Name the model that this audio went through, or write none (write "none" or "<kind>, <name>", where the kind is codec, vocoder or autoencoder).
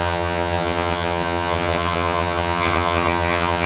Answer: vocoder, HiFi-GAN